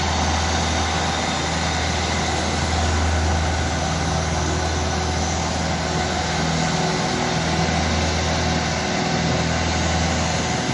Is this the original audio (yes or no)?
yes